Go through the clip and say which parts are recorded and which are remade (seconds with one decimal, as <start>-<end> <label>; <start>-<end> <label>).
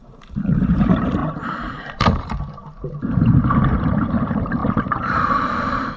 0.0-6.0 remade